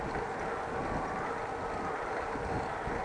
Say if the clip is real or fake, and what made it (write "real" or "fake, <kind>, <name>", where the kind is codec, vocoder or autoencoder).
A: real